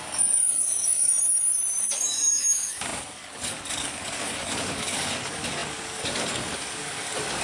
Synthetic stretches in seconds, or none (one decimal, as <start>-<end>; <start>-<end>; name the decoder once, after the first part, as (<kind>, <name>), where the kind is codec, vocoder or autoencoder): 0.0-1.1 (codec, DAC); 1.8-7.4